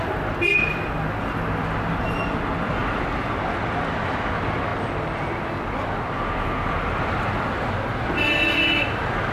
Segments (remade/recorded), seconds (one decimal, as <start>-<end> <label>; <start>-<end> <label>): 0.0-9.3 recorded